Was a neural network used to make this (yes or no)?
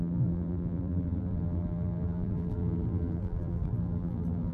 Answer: yes